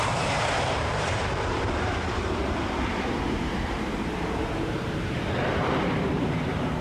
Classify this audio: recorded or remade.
remade